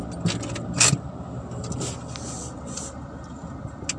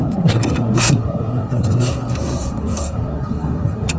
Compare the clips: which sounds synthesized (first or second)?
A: second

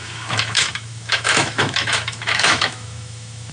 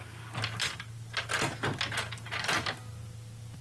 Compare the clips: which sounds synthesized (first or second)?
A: first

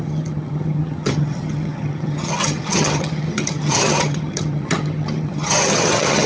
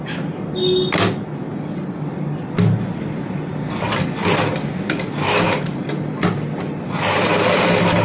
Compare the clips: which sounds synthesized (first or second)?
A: first